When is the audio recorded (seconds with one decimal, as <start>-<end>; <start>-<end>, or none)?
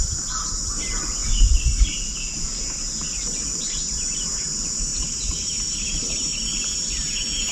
0.0-4.9; 6.4-7.5